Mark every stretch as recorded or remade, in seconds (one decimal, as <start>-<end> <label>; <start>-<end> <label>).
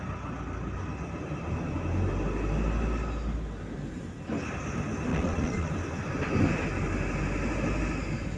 0.0-5.1 recorded; 5.1-5.7 remade; 5.7-8.4 recorded